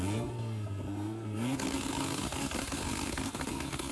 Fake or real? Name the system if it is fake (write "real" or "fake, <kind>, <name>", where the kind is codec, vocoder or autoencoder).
fake, codec, SNAC